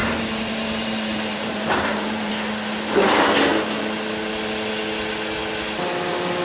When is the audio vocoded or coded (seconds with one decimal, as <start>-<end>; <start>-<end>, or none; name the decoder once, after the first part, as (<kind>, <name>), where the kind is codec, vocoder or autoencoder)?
0.0-2.3 (vocoder, BigVGAN v2)